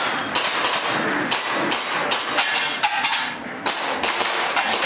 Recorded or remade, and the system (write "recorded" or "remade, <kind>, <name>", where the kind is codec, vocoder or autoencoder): recorded